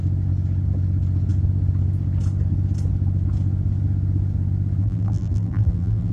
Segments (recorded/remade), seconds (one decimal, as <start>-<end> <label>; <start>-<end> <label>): 0.0-4.8 recorded; 4.8-6.1 remade